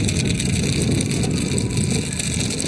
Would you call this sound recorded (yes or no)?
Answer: yes